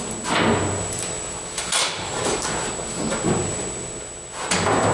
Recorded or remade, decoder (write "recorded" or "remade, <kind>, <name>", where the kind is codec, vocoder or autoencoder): recorded